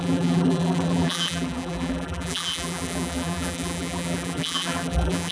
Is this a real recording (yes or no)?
no